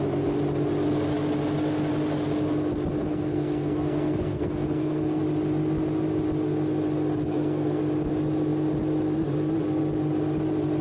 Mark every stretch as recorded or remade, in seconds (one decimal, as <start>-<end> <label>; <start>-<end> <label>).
0.0-3.0 recorded; 3.0-5.2 remade; 5.2-7.2 recorded; 7.2-7.8 remade; 7.8-10.8 recorded